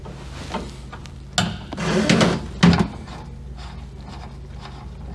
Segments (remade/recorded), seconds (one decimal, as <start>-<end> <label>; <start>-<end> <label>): 0.0-5.1 recorded